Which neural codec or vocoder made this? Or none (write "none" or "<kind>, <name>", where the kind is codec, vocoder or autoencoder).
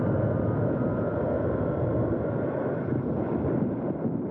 none